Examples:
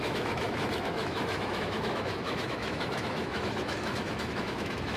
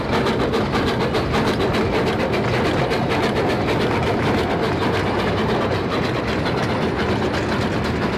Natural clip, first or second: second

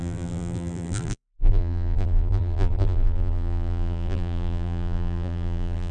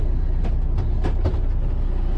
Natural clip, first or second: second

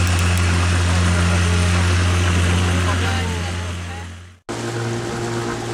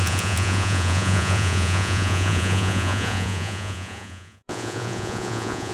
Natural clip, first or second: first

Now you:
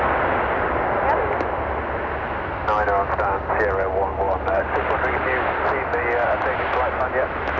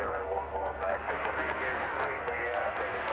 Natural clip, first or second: first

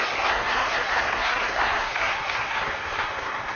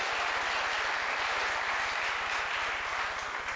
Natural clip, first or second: second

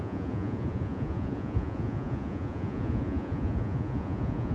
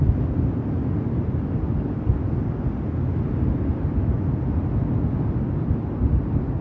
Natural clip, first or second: second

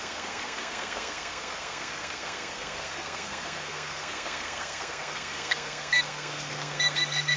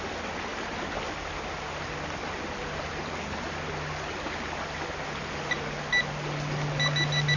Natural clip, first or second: second